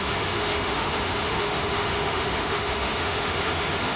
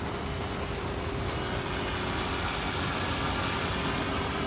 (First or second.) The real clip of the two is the second